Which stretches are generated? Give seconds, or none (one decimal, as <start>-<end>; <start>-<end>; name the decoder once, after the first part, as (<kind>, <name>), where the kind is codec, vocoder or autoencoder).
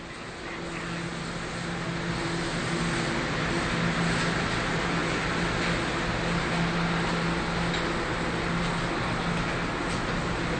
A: none